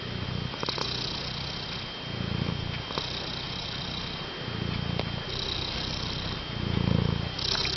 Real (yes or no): yes